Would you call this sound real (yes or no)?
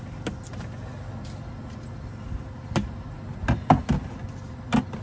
yes